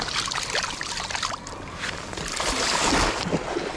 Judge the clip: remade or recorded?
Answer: recorded